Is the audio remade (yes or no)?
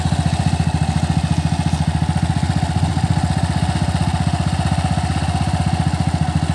no